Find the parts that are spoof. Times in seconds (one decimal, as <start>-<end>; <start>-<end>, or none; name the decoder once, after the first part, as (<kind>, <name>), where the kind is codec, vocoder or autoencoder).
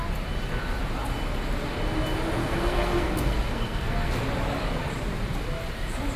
2.4-4.1 (codec, SNAC)